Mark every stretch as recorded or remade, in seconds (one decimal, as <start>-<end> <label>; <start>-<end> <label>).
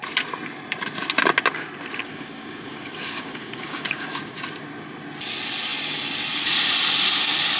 0.0-2.0 recorded; 2.0-4.4 remade; 4.4-7.6 recorded